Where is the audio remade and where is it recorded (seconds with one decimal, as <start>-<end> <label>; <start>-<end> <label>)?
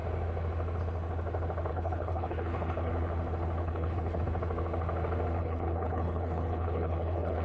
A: 0.0-1.7 recorded; 1.7-2.9 remade; 2.9-3.6 recorded; 3.6-4.2 remade; 4.2-5.4 recorded; 5.4-7.4 remade